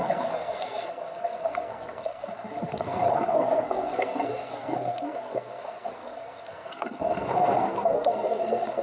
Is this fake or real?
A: fake